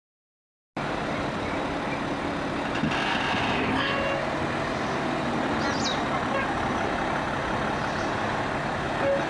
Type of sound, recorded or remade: recorded